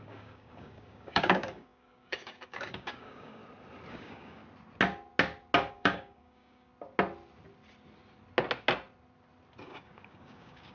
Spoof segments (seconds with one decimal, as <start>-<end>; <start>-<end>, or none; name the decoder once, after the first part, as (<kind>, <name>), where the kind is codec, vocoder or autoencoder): 0.0-3.4 (codec, DAC); 3.9-4.4; 5.7-6.7; 9.6-10.7

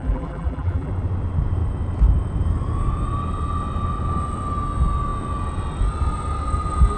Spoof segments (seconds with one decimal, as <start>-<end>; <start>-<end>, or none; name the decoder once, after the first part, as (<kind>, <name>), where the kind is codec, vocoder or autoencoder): 0.0-0.9 (vocoder, BigVGAN v2)

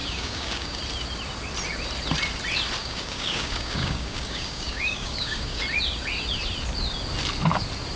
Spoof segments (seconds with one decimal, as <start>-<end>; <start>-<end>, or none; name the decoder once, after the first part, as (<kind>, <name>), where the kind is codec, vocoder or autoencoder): 0.0-0.8 (codec, DAC); 2.8-5.6

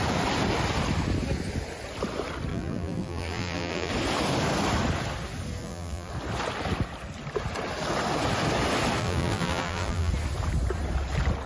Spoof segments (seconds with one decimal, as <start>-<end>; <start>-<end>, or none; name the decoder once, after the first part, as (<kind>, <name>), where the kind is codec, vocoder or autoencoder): 2.5-3.9 (vocoder, BigVGAN v2); 5.6-6.1; 9.0-10.1

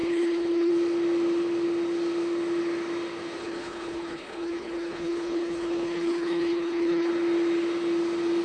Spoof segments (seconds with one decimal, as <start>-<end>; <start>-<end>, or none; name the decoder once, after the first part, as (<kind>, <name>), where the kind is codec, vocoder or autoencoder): 0.0-0.7 (codec, HILCodec); 3.4-7.1

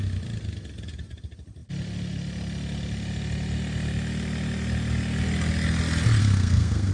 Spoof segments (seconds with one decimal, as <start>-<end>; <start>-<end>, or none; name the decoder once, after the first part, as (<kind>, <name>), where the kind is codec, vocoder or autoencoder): 6.2-6.9 (codec, SNAC)

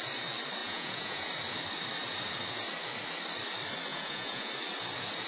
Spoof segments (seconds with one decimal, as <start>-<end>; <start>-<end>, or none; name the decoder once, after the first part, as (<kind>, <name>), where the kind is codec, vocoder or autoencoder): 0.6-1.3 (vocoder, Vocos); 3.9-4.5

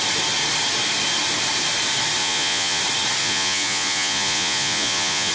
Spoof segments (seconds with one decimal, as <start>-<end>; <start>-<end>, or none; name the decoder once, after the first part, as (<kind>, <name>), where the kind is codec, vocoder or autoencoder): 2.2-2.8 (vocoder, Vocos); 3.2-5.3